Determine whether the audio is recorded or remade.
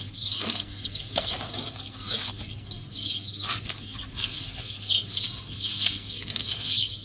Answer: remade